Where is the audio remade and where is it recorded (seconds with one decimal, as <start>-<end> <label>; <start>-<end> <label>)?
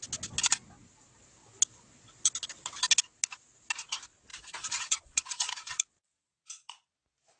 0.0-4.3 recorded; 4.3-6.9 remade; 6.9-7.4 recorded